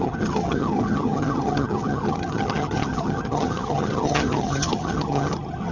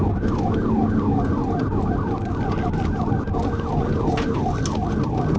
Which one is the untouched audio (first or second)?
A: second